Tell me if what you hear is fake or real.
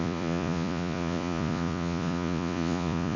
fake